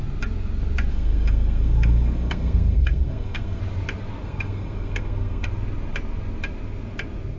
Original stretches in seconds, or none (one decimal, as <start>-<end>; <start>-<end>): 0.0-0.9; 3.6-4.2; 5.5-7.4